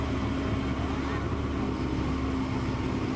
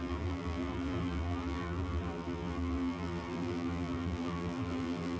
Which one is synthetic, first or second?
second